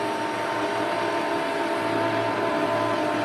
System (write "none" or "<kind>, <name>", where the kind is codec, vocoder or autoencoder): none